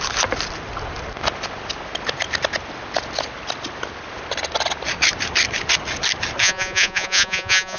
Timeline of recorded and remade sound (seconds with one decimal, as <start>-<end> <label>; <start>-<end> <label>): 0.0-6.4 recorded; 6.4-7.8 remade